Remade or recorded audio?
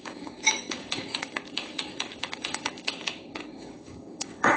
remade